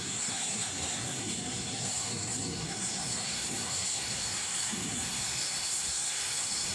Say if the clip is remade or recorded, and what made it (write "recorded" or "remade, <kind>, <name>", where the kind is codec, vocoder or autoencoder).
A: remade, codec, SNAC